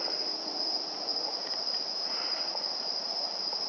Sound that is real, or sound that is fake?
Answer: fake